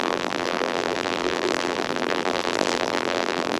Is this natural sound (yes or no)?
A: no